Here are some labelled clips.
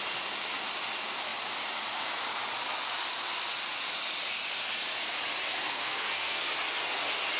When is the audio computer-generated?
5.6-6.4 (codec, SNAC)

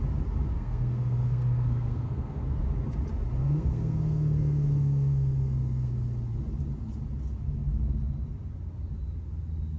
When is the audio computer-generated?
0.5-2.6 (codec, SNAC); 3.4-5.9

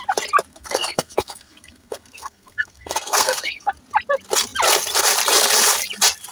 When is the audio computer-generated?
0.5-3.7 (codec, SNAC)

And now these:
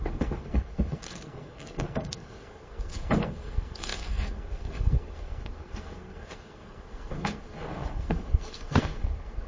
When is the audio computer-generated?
0.0-9.5 (codec, SNAC)

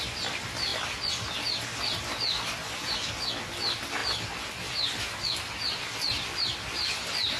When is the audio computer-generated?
none

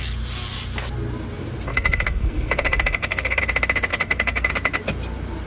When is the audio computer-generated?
1.7-3.4 (codec, SNAC); 3.9-4.5

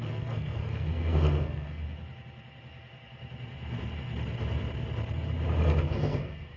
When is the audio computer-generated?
0.0-1.8 (codec, SNAC); 5.8-6.6

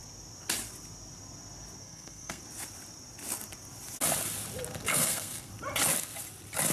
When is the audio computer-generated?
1.8-2.4 (codec, SNAC); 4.9-5.5